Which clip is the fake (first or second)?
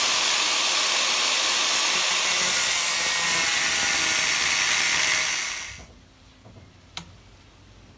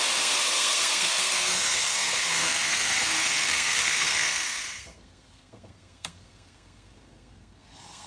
second